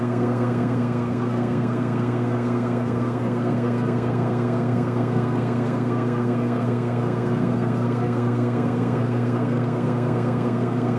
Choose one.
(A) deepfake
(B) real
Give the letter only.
A